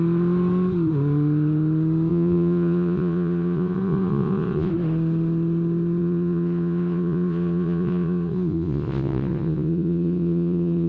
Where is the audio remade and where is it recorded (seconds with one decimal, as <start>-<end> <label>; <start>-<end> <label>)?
0.0-2.1 recorded; 2.1-4.7 remade; 4.7-6.0 recorded; 6.0-10.9 remade